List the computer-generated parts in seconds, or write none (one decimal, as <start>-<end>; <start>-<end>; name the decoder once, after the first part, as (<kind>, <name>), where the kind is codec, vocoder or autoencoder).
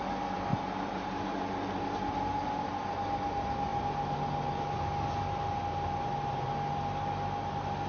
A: 0.5-1.2 (vocoder, BigVGAN v2)